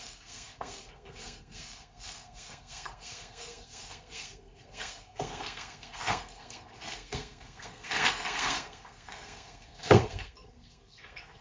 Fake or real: fake